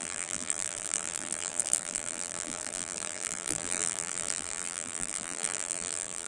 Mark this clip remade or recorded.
remade